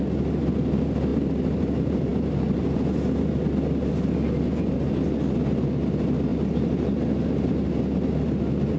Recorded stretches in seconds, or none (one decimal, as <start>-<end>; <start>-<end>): 0.0-8.8